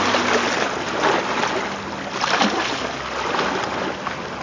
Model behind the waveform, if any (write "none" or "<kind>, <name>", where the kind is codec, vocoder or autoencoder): none